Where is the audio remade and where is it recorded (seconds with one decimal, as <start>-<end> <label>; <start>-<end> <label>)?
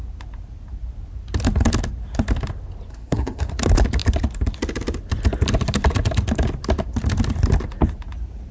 0.0-2.9 recorded; 2.9-3.5 remade; 3.5-8.5 recorded